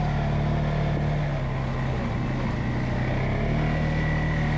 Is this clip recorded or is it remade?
recorded